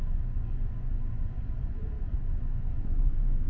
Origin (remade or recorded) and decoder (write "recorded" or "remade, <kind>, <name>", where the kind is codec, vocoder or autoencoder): remade, vocoder, Vocos